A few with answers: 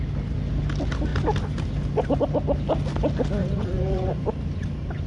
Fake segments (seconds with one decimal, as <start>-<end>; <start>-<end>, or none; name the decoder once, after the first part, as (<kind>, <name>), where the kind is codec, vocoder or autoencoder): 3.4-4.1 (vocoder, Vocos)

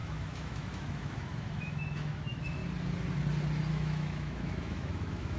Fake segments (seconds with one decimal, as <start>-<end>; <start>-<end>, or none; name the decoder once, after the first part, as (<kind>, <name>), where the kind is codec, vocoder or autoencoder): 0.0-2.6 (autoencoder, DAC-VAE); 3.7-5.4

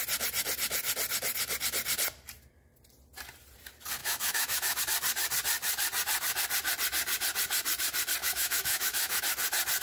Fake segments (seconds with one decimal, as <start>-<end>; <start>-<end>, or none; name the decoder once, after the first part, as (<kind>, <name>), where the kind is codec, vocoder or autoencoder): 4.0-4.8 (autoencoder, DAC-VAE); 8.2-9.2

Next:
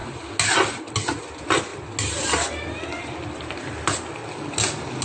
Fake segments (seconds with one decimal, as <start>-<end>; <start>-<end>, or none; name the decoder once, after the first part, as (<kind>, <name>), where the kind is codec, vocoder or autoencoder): none

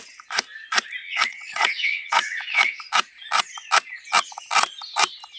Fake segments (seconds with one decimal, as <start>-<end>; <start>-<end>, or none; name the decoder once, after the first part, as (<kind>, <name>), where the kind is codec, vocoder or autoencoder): 1.0-2.8 (vocoder, WaveNeXt)

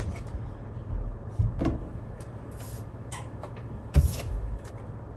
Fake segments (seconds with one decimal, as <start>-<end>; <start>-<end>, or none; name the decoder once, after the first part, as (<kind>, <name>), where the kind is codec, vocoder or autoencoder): 1.8-4.7 (autoencoder, DAC-VAE)

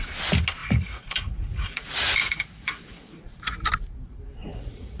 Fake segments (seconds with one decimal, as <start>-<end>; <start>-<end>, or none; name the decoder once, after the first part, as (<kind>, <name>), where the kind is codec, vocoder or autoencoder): 0.6-3.6 (vocoder, Vocos); 4.4-5.0

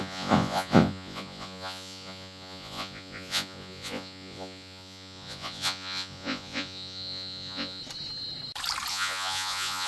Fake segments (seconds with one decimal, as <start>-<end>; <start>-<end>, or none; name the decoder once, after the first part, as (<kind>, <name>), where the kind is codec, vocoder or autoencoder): 0.0-7.8 (vocoder, Vocos); 8.9-9.9